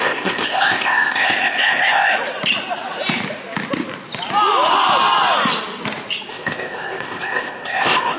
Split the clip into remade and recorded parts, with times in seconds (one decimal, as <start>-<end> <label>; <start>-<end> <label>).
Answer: 0.0-2.1 remade; 2.1-6.3 recorded; 6.3-8.2 remade